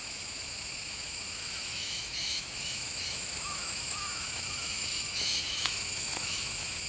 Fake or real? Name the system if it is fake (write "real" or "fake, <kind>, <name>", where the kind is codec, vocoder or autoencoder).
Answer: fake, autoencoder, DAC-VAE